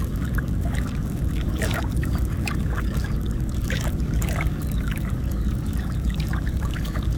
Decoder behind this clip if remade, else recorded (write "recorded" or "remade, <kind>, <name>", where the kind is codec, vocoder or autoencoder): remade, codec, DAC